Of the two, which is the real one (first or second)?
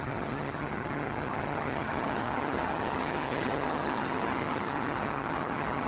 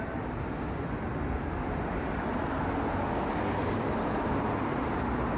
second